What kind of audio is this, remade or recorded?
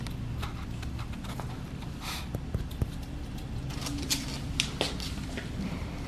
recorded